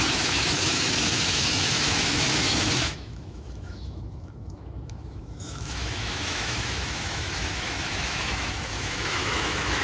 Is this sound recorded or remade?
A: remade